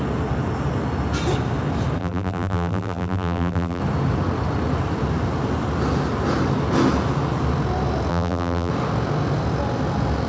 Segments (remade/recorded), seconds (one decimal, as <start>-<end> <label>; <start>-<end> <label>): 0.0-2.0 recorded; 2.0-3.8 remade; 3.8-8.1 recorded; 8.1-8.7 remade; 8.7-10.3 recorded